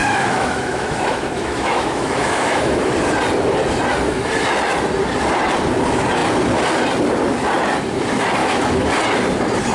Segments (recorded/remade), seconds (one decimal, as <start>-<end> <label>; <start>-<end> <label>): 0.0-2.9 remade; 2.9-8.4 recorded; 8.4-8.9 remade; 8.9-9.7 recorded